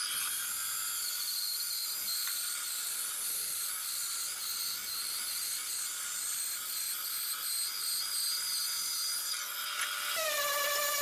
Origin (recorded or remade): recorded